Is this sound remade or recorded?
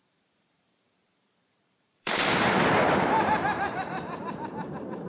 remade